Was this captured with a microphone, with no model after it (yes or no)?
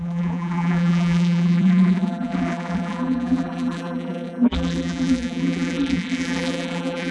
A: no